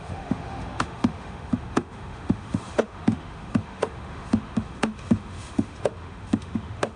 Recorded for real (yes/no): no